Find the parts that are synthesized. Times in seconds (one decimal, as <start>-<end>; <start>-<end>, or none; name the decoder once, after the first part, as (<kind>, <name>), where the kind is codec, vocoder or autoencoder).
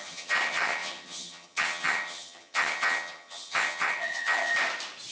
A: 0.0-4.5 (vocoder, HiFi-GAN)